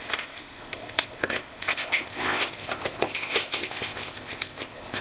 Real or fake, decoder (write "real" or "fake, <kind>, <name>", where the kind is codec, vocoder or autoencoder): fake, codec, ZipCodec